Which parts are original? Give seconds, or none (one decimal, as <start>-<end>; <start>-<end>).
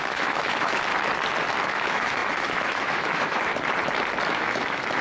0.9-1.5; 3.5-4.3